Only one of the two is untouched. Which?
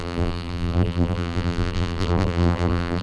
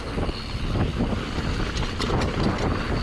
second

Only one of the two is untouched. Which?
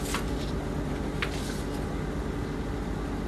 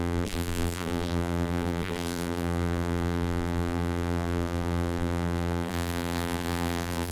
first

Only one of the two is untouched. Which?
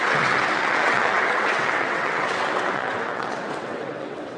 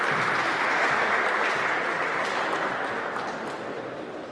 second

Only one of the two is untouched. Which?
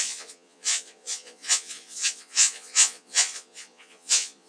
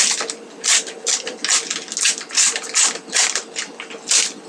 second